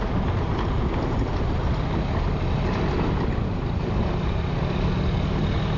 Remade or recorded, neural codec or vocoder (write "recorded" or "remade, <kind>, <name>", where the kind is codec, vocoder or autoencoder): recorded